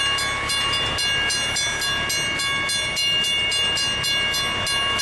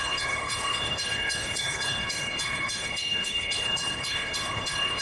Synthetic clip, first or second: second